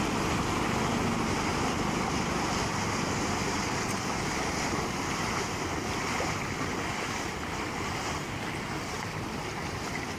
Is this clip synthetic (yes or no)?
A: no